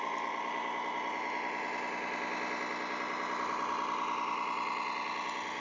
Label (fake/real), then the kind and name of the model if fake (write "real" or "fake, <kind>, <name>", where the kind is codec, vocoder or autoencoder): real